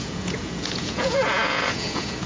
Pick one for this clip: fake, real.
fake